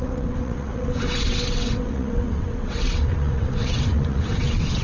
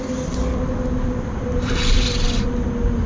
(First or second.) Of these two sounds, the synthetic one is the first